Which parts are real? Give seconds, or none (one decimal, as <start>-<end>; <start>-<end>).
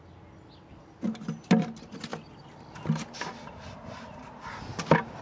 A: 0.0-5.2